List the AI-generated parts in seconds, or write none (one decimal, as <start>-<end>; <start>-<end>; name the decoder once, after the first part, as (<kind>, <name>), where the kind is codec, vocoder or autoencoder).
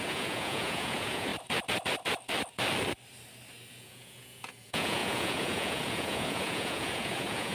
0.0-1.3 (vocoder, Vocos); 3.7-7.5